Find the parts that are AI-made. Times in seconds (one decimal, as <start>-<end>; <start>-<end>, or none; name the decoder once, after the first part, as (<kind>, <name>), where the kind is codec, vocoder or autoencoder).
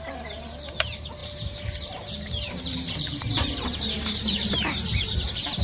0.0-5.6 (vocoder, BigVGAN v2)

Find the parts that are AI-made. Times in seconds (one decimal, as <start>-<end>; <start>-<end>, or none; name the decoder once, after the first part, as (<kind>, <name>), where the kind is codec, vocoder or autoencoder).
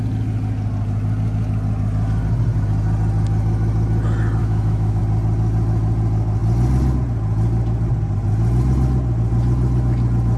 4.4-5.0 (autoencoder, DAC-VAE)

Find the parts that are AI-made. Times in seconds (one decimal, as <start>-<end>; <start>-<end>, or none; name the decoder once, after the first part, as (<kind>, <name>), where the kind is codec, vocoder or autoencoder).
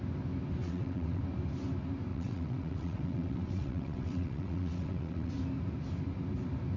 0.6-1.2 (vocoder, WaveNeXt); 2.1-5.3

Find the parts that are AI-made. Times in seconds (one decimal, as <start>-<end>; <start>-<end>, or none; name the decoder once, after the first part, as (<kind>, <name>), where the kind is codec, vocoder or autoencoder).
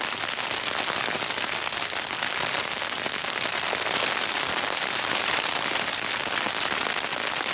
4.5-5.9 (vocoder, BigVGAN v2)